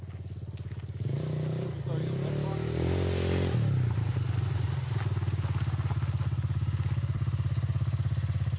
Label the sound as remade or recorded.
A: recorded